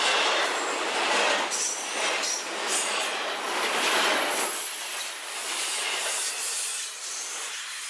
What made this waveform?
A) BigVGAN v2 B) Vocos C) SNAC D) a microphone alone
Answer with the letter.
D